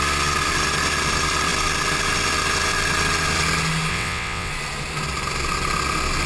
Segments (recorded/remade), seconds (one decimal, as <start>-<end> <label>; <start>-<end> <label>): 0.0-3.9 recorded; 3.9-4.5 remade; 4.5-6.3 recorded